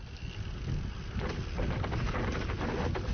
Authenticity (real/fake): real